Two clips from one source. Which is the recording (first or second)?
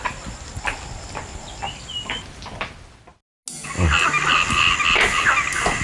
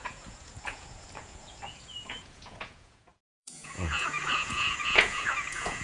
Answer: first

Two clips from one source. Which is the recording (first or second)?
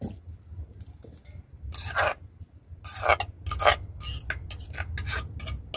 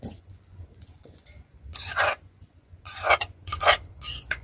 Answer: first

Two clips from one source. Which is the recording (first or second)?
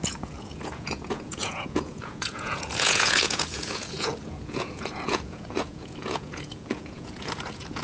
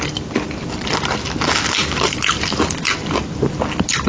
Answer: second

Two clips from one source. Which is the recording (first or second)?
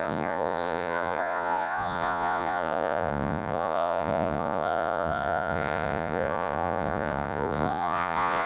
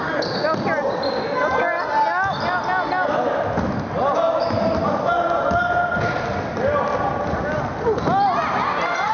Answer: second